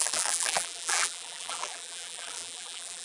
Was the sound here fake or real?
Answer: fake